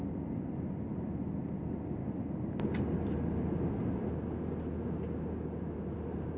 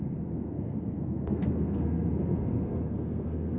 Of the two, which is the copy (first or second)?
second